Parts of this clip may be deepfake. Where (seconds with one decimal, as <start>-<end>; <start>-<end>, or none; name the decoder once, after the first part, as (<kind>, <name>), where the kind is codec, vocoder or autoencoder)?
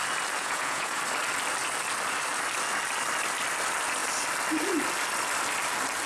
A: 0.4-1.0 (vocoder, Vocos)